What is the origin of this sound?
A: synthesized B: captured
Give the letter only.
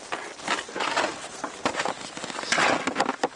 B